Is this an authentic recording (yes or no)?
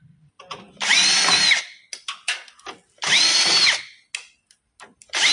yes